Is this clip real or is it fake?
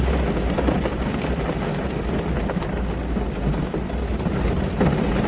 real